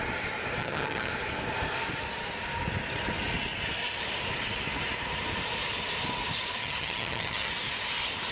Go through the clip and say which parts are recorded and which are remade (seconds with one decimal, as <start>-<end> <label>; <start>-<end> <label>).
0.0-0.6 recorded; 0.6-1.1 remade; 1.1-6.6 recorded; 6.6-7.5 remade; 7.5-8.3 recorded